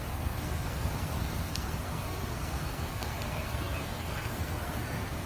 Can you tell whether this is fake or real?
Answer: fake